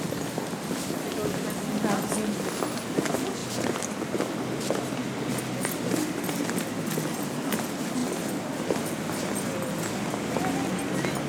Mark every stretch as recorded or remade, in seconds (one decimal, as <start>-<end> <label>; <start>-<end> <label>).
0.0-11.3 recorded